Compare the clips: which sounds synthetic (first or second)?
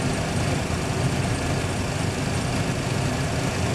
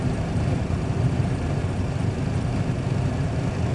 second